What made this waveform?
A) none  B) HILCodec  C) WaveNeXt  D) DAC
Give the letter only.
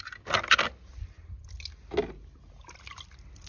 A